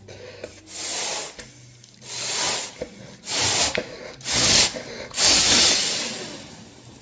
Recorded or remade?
recorded